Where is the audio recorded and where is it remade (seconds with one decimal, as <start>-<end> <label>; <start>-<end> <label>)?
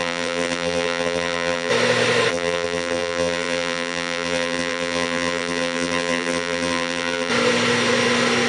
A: 0.0-1.7 remade; 1.7-2.3 recorded; 2.3-7.3 remade; 7.3-8.5 recorded